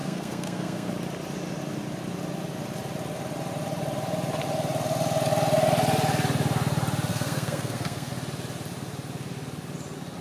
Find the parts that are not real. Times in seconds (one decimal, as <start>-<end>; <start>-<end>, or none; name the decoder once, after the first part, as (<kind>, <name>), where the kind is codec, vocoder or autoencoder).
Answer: 0.0-0.9 (codec, SNAC); 7.1-8.1